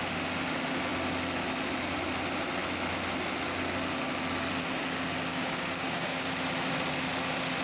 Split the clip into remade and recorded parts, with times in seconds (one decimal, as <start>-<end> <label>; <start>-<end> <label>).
0.0-5.3 recorded; 5.3-6.3 remade; 6.3-7.6 recorded